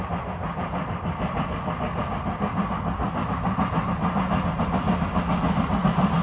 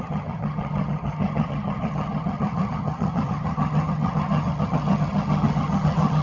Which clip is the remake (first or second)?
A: second